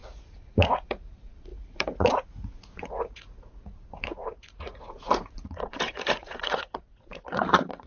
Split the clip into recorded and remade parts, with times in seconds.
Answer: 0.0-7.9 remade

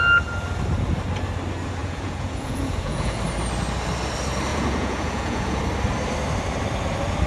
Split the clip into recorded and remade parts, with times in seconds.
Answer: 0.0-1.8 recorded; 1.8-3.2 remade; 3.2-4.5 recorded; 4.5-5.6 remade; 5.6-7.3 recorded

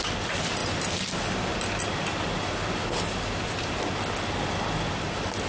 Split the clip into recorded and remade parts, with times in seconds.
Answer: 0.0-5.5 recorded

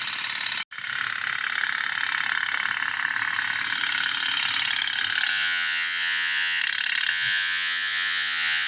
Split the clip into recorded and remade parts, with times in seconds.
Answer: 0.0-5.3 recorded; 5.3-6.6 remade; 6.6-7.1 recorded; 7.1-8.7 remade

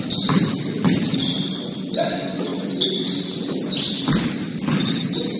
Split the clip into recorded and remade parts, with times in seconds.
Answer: 0.0-5.4 recorded

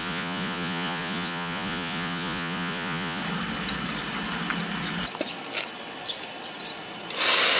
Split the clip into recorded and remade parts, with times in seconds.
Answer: 0.0-3.2 remade; 3.2-7.6 recorded

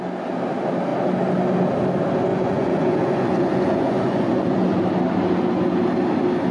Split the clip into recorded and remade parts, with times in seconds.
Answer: 0.0-2.3 recorded; 2.3-4.8 remade; 4.8-6.5 recorded

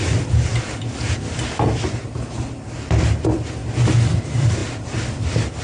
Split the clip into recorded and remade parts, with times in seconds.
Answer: 0.0-5.6 recorded